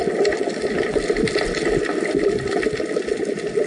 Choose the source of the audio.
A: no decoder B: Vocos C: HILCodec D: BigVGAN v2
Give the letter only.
A